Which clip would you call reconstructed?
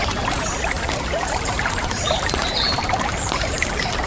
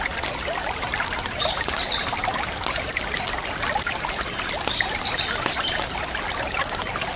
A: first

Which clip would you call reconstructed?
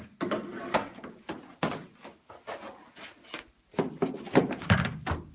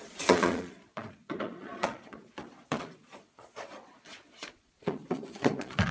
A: second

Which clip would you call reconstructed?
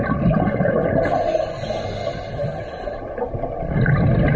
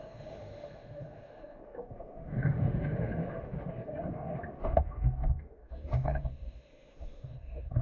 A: second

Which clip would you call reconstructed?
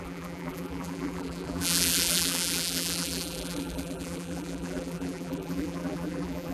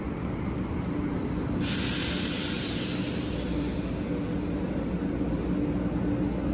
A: first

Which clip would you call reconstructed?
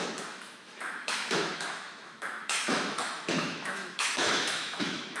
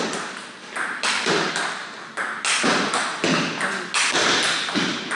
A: first